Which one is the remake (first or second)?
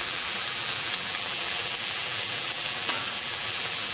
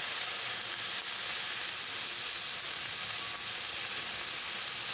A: first